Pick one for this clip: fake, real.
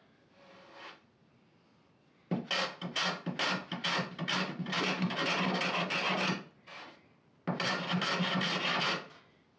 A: real